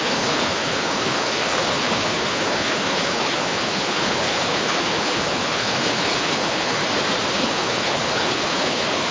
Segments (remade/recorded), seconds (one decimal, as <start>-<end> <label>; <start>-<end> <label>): 0.0-6.8 remade; 6.8-7.3 recorded; 7.3-9.1 remade